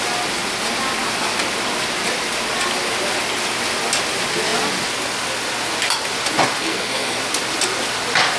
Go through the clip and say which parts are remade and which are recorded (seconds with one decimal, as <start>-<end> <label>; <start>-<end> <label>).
0.0-6.6 recorded; 6.6-7.2 remade; 7.2-8.4 recorded